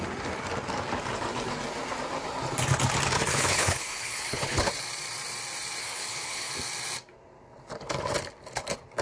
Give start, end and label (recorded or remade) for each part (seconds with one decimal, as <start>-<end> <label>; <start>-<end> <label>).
0.0-3.3 recorded; 3.3-4.7 remade; 4.7-5.8 recorded; 5.8-6.5 remade; 6.5-9.0 recorded